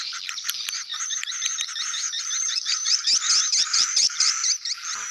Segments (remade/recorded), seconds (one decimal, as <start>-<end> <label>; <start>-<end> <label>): 0.0-3.0 remade; 3.0-3.7 recorded; 3.7-5.1 remade